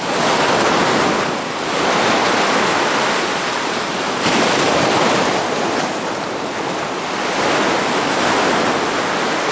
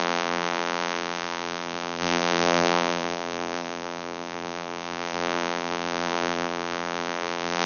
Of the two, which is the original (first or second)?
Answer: first